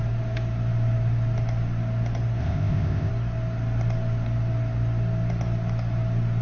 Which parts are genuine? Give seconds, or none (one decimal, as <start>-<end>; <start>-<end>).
0.0-2.4; 3.1-6.4